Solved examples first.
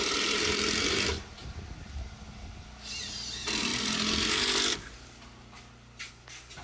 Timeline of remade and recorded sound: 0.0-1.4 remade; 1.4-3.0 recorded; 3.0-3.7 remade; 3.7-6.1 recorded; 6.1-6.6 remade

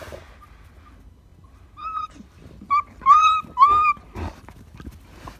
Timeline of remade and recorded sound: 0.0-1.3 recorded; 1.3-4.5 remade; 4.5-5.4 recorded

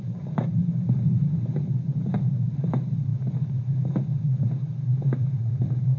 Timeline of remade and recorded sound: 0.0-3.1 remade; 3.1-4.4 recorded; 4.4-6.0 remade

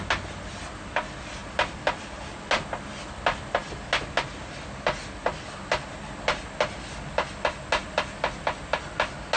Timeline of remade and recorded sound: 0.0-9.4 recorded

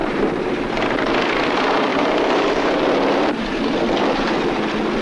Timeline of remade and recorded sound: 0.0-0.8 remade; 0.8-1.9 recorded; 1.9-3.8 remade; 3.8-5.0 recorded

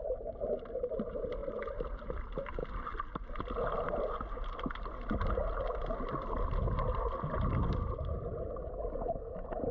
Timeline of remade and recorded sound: 0.0-1.4 recorded; 1.4-2.1 remade; 2.1-9.7 recorded

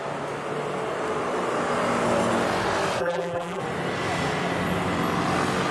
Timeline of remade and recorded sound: 0.0-3.0 recorded; 3.0-3.6 remade; 3.6-5.7 recorded

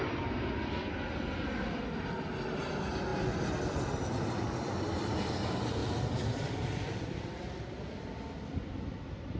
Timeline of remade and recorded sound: 0.0-3.1 recorded; 3.1-5.3 remade; 5.3-5.8 recorded; 5.8-8.9 remade; 8.9-9.4 recorded